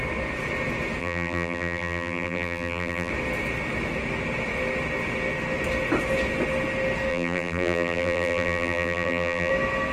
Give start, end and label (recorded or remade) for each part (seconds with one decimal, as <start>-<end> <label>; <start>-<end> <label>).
0.0-1.0 recorded; 1.0-3.1 remade; 3.1-7.1 recorded; 7.1-9.5 remade; 9.5-9.9 recorded